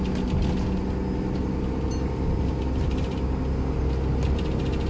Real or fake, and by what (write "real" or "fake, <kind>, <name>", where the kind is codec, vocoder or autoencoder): real